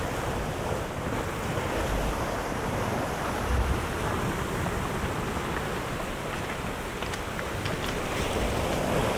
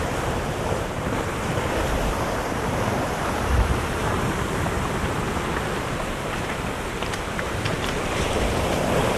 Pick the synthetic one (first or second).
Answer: second